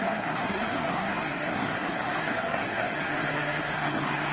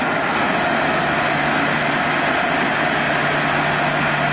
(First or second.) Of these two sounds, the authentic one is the second